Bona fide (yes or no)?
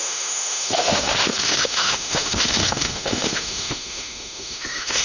no